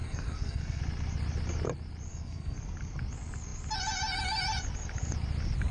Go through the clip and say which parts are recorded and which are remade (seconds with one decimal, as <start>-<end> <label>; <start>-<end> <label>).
0.0-0.8 remade; 0.8-2.1 recorded; 2.1-2.6 remade; 2.6-5.7 recorded